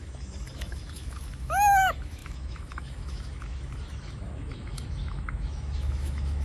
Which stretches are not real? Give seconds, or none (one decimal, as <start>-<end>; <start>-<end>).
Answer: 0.0-6.4